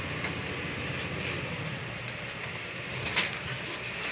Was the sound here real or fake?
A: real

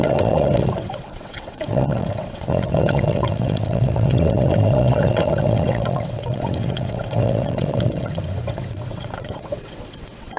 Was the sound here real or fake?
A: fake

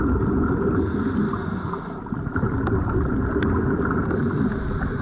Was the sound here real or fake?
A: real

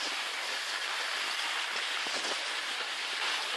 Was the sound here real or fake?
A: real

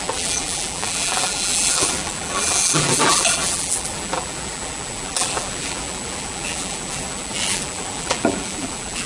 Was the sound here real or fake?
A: fake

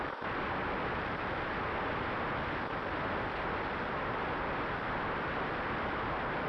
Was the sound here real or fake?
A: real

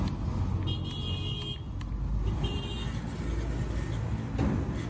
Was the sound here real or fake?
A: real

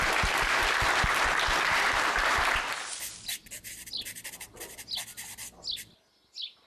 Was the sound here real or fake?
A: real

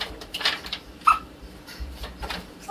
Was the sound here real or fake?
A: fake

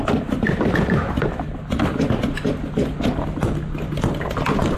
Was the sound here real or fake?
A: real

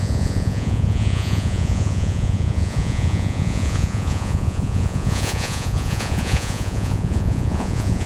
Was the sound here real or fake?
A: fake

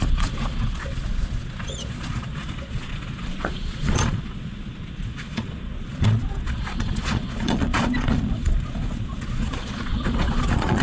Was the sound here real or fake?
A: fake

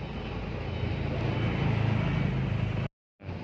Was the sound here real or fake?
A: real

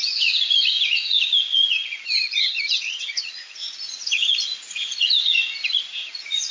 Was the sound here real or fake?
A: fake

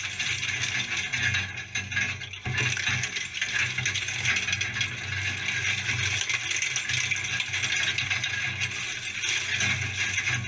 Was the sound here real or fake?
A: real